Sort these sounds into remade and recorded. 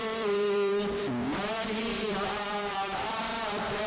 remade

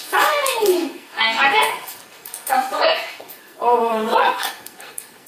remade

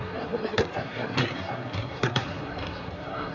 remade